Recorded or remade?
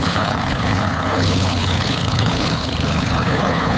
remade